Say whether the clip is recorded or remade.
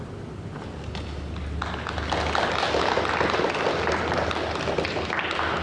recorded